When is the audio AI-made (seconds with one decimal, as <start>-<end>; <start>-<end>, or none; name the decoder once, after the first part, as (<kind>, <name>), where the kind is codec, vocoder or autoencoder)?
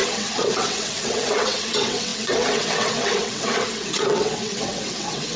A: 0.0-5.4 (vocoder, WaveNeXt)